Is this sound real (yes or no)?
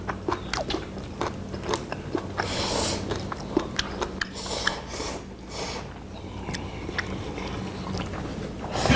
yes